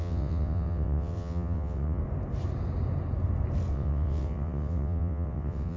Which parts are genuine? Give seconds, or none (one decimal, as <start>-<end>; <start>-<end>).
2.0-3.7